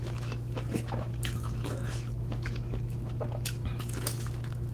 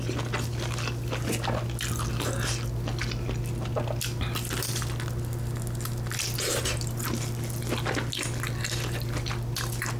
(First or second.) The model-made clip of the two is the first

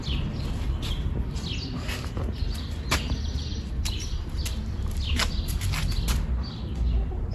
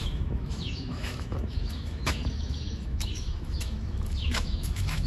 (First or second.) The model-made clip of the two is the second